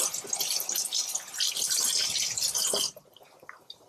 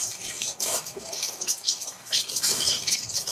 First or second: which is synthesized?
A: second